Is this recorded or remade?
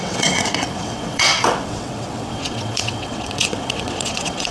remade